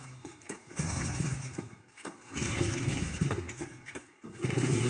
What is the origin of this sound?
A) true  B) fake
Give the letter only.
B